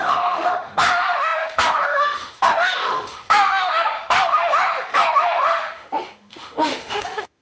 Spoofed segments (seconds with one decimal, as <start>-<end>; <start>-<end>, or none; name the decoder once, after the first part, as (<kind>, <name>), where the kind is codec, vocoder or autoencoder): 0.0-7.4 (autoencoder, DAC-VAE)